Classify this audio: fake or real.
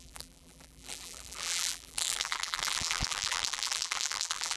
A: fake